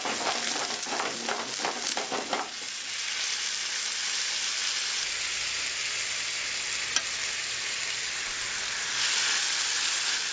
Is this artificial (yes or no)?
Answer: no